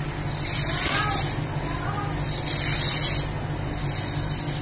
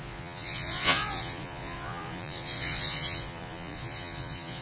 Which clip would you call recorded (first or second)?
first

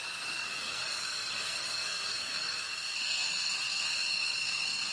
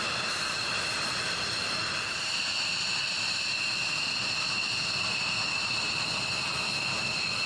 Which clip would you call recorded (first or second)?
second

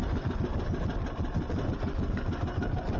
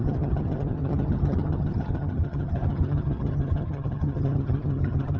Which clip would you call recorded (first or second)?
first